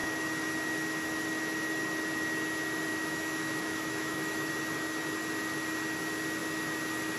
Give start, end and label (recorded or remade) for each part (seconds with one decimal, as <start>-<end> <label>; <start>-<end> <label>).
0.0-2.9 recorded; 2.9-4.5 remade; 4.5-7.2 recorded